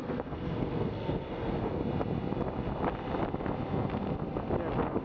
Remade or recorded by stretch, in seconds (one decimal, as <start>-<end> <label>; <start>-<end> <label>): 0.0-1.8 remade; 1.8-5.0 recorded